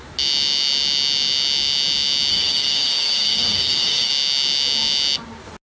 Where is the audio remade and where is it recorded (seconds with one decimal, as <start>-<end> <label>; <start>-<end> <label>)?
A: 0.0-2.3 recorded; 2.3-4.1 remade; 4.1-5.6 recorded